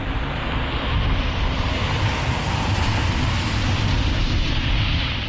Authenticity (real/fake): real